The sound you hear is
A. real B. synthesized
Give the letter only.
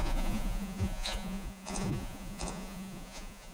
B